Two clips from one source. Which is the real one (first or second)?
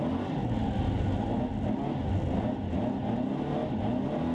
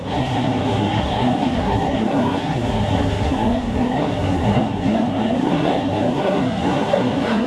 first